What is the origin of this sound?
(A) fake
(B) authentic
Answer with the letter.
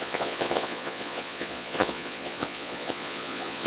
A